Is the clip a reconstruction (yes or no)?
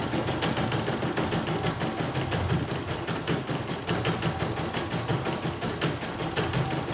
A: no